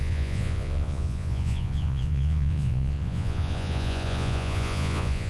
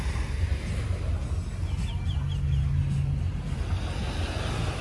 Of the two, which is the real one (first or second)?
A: second